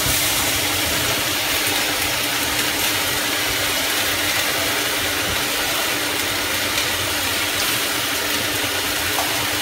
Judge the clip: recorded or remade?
remade